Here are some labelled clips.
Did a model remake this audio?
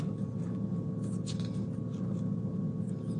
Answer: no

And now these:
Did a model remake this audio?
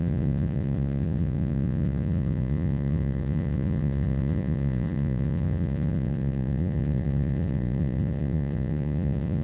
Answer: yes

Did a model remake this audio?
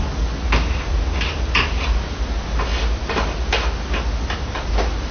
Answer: no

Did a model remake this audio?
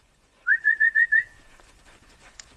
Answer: yes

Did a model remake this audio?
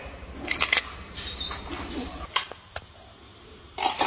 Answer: no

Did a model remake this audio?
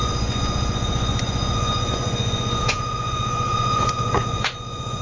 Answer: yes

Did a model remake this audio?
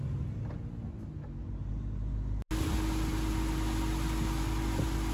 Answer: no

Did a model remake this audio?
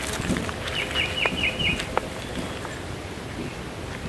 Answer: no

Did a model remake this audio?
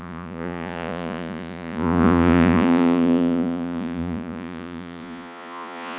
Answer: yes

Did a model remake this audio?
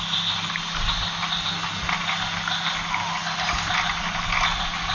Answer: no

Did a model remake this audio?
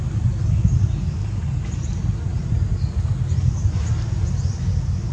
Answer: no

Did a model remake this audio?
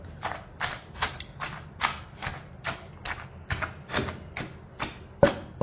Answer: no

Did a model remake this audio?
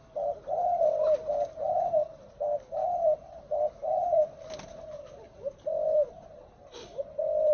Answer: no